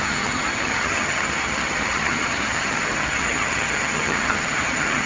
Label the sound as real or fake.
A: fake